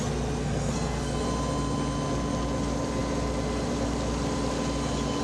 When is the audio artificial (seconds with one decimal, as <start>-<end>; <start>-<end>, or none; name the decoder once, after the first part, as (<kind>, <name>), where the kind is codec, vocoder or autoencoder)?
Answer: 0.4-1.2 (codec, SNAC)